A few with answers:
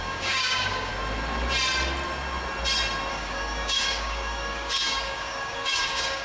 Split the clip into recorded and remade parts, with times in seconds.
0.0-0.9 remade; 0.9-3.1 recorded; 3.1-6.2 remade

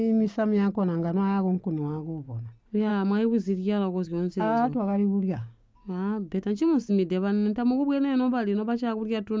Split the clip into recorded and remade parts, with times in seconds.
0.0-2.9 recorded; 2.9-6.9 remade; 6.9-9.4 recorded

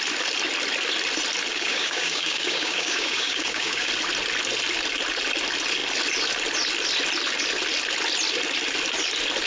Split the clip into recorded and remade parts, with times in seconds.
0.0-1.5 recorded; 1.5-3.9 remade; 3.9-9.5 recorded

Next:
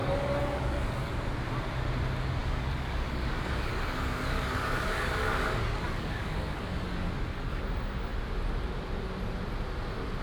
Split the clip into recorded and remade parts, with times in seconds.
0.0-1.1 remade; 1.1-2.4 recorded; 2.4-7.6 remade; 7.6-10.2 recorded

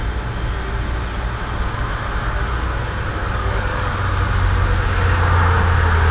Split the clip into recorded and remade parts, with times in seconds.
0.0-3.1 recorded; 3.1-3.9 remade; 3.9-6.1 recorded

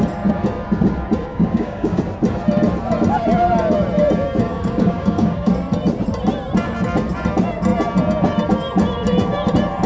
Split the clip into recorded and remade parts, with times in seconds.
0.0-1.3 recorded; 1.3-2.0 remade; 2.0-4.5 recorded; 4.5-5.5 remade; 5.5-9.9 recorded

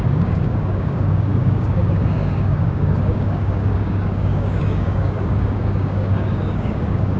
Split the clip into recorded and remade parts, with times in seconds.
0.0-7.2 remade